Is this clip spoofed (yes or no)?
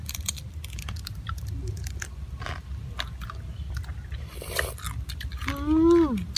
no